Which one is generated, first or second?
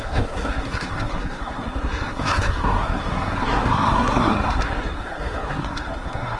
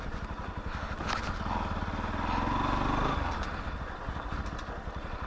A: first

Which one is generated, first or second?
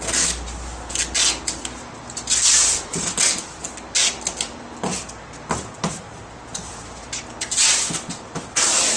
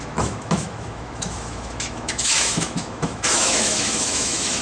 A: second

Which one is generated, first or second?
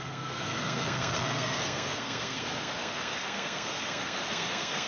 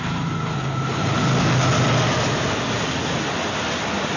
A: first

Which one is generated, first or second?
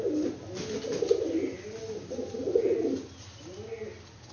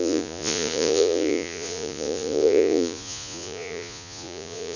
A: second